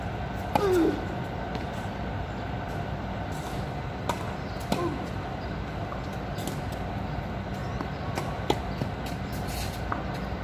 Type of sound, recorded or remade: recorded